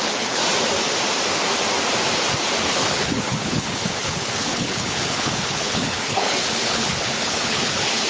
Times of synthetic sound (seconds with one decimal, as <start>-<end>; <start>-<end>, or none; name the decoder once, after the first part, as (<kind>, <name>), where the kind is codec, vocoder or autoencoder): 0.0-0.4 (codec, HILCodec); 2.6-8.1